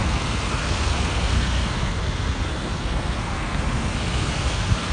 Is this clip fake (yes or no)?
yes